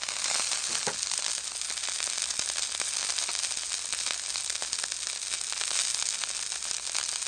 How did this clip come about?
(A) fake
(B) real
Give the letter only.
B